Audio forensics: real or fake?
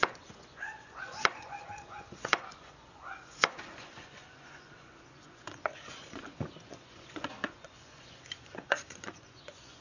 fake